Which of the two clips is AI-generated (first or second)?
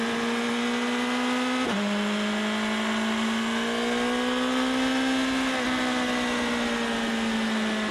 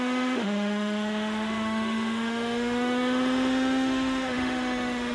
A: second